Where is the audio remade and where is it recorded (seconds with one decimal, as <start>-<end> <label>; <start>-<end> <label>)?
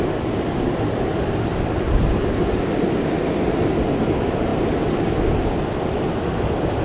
0.0-6.8 recorded